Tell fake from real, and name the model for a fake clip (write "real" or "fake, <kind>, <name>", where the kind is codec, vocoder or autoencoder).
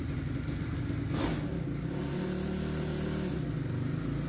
real